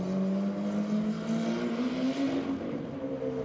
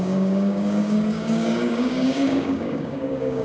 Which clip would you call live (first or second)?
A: first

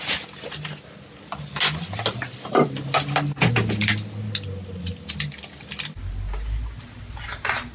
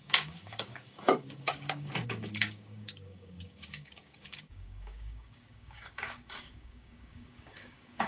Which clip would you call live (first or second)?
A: first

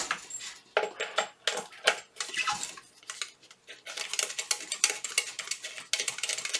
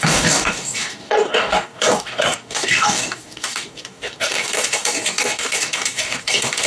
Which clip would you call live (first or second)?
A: first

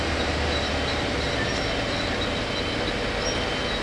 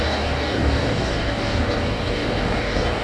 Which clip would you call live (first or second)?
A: first